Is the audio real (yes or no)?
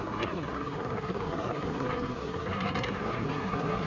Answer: no